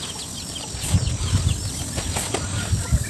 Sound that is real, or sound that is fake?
real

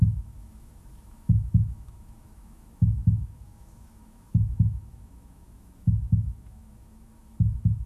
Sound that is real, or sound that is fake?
fake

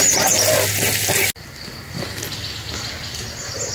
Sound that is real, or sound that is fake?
real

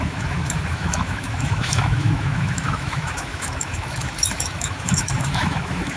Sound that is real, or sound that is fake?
fake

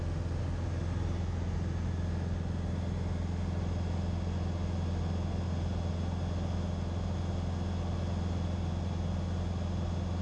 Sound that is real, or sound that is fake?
real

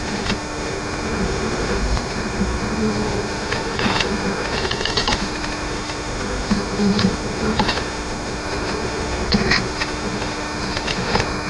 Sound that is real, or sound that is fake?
fake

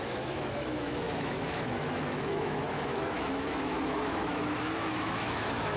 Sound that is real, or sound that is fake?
fake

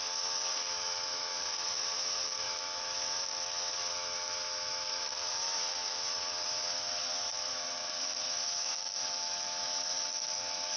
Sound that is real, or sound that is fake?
fake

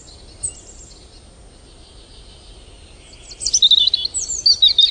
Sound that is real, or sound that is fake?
real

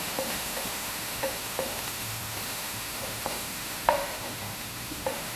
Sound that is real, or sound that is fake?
fake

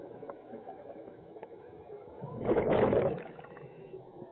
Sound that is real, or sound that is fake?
fake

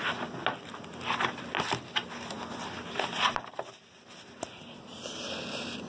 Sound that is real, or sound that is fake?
real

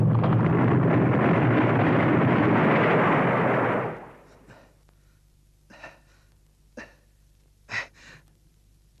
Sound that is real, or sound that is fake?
real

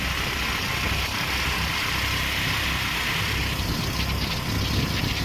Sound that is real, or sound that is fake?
real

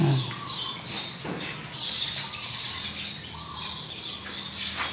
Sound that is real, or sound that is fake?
real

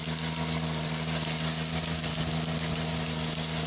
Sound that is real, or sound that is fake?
real